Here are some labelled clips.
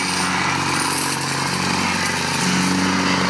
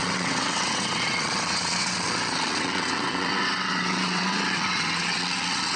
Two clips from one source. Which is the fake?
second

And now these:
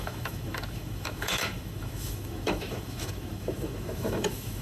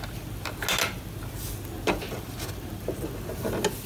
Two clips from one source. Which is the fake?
first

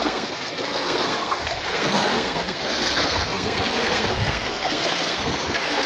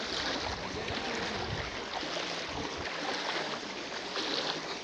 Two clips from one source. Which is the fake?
first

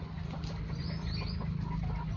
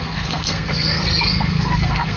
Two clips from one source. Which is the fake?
second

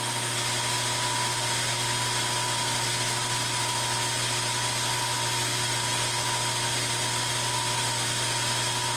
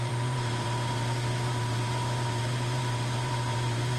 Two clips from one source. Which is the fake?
second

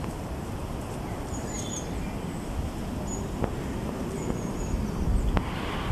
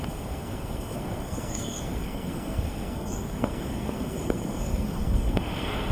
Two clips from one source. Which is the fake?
second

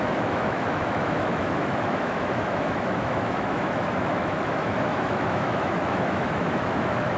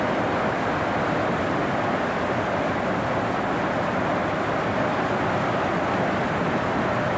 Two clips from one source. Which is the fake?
first